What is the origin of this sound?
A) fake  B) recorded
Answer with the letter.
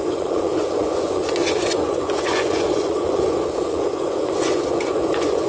A